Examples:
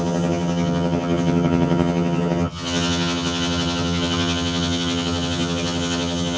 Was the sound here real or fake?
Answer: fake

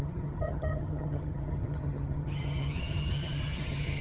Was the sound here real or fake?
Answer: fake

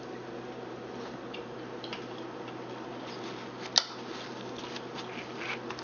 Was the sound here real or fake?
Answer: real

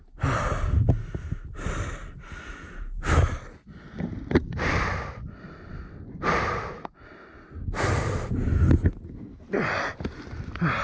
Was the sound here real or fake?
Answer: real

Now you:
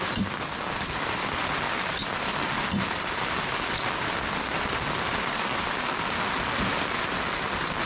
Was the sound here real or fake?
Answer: real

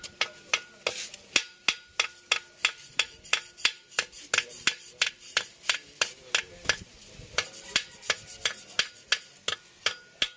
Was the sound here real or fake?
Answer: real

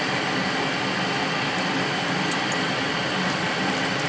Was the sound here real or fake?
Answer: real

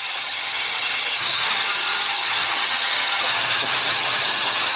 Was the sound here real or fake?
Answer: fake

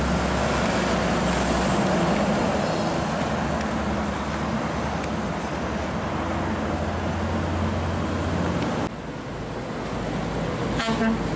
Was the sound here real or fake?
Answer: real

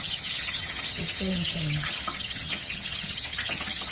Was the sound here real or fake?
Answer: fake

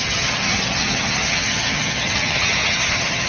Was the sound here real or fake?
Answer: fake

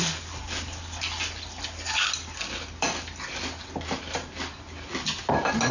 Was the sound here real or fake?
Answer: real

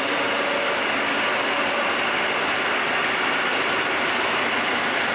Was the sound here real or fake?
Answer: real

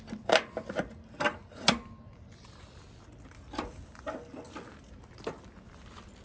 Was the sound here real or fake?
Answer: real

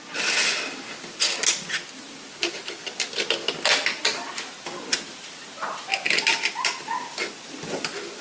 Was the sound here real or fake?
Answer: real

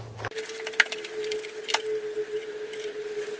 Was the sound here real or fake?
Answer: real